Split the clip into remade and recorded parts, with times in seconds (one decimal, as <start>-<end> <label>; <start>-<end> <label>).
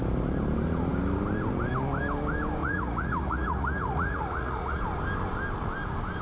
0.0-2.6 recorded; 2.6-4.8 remade; 4.8-6.2 recorded